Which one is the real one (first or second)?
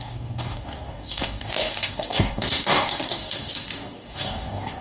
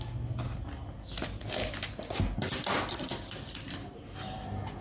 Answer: second